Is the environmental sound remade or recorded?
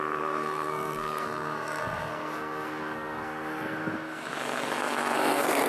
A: remade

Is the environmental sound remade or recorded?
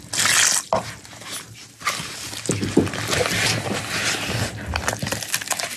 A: recorded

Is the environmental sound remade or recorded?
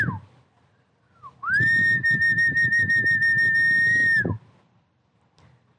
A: recorded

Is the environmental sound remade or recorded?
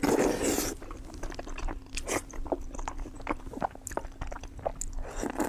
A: recorded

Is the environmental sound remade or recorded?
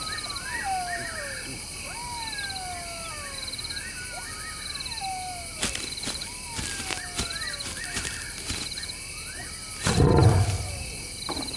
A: recorded